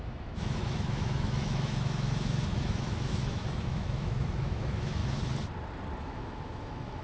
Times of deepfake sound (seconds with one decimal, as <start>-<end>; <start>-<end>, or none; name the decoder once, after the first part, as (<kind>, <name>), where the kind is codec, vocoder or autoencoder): 0.0-5.0 (autoencoder, DAC-VAE); 6.0-7.0